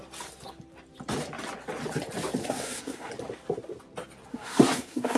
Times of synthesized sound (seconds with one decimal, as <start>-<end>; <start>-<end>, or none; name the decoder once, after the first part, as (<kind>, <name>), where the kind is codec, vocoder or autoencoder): 2.4-3.1 (codec, SNAC); 4.3-5.2